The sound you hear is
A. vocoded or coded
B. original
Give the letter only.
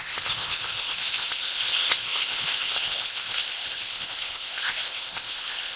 A